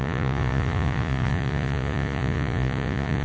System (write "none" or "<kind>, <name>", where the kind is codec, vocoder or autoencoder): vocoder, Vocos